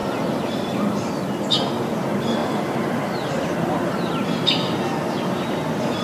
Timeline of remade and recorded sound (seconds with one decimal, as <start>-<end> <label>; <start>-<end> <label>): 0.0-0.9 remade; 0.9-2.4 recorded; 2.4-4.1 remade; 4.1-6.0 recorded